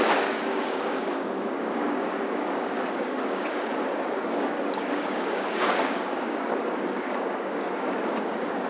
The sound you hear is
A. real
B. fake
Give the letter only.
B